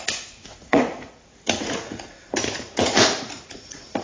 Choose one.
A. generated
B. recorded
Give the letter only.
A